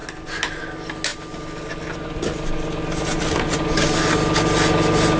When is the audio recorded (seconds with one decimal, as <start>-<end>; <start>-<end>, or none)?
0.0-5.2

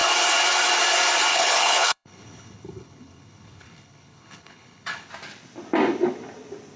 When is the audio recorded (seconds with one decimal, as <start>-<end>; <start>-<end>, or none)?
0.0-1.3; 5.1-6.8

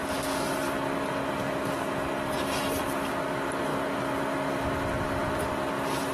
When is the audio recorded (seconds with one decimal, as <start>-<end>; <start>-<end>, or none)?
0.0-6.1